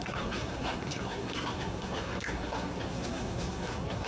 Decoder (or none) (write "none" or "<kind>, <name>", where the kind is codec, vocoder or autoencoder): codec, SNAC